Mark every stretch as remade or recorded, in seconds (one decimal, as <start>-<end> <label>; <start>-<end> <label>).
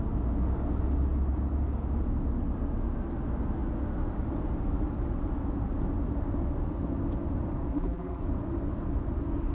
0.0-7.7 recorded; 7.7-8.2 remade; 8.2-9.5 recorded